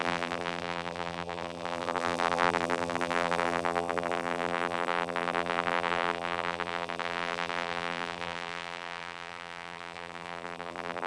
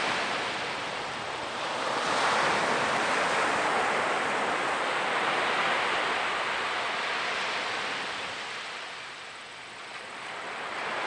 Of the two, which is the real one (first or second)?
second